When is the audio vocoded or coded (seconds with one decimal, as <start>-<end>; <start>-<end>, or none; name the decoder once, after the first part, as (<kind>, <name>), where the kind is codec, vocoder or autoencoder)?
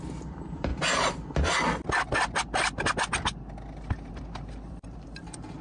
0.0-0.7 (vocoder, BigVGAN v2); 4.1-5.6